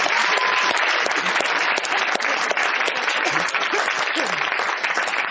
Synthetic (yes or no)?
yes